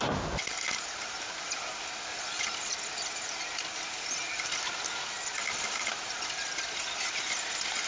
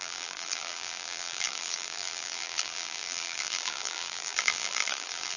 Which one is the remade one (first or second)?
second